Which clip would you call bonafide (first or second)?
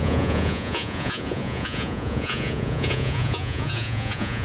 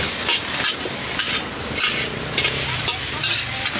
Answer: second